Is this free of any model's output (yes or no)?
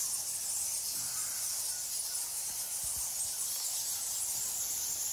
yes